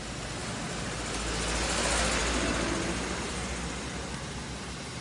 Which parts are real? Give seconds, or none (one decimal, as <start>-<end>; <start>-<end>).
0.0-5.0